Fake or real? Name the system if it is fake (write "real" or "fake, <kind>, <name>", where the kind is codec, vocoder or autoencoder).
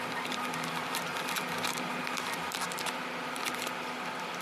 real